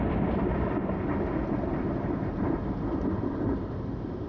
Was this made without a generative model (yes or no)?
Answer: yes